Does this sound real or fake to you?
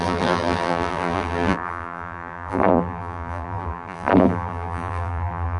fake